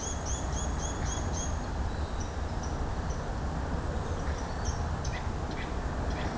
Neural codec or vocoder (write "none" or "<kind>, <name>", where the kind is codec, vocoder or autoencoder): none